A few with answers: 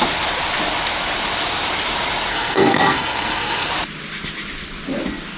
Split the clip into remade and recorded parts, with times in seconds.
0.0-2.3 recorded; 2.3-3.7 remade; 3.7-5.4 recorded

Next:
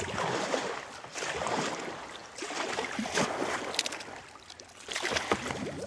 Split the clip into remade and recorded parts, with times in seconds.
0.0-5.9 recorded